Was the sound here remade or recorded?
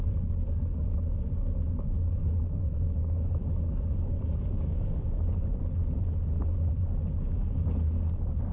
recorded